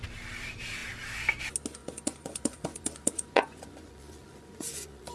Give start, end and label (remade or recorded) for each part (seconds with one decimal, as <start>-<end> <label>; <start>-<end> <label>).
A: 0.0-1.8 recorded; 1.8-5.1 remade